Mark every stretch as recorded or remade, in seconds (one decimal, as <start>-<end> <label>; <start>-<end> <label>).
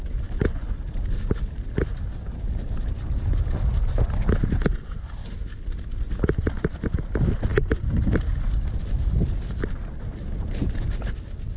0.0-11.6 recorded